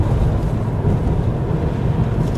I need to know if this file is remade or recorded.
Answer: recorded